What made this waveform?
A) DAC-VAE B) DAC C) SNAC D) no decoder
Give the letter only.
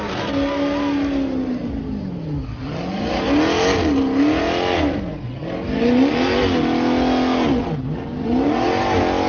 D